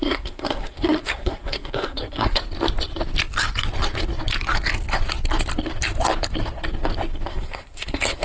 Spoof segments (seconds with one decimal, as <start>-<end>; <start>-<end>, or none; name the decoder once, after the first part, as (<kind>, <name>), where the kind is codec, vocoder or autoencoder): 0.0-2.4 (codec, SNAC); 7.3-8.2

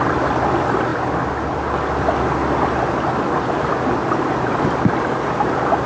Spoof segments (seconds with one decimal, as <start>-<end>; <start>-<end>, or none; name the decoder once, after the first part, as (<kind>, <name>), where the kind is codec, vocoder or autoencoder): none